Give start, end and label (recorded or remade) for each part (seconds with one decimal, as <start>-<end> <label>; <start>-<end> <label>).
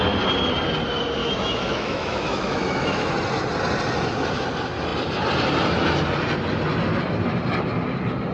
0.0-1.2 recorded; 1.2-3.1 remade; 3.1-8.3 recorded